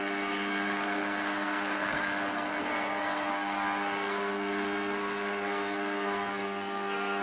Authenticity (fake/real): fake